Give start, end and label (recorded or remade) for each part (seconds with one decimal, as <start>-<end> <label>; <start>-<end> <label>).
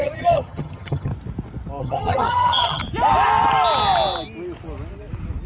0.0-1.1 remade; 1.1-1.8 recorded; 1.8-2.8 remade; 2.8-5.5 recorded